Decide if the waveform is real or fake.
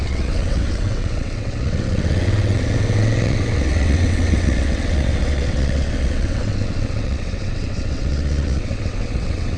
fake